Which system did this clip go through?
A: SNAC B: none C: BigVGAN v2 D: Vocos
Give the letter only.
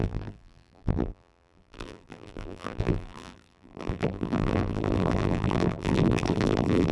C